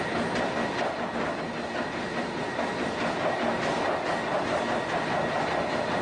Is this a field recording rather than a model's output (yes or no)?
yes